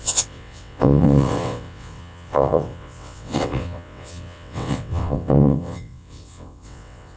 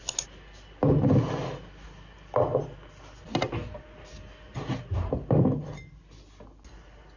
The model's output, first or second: first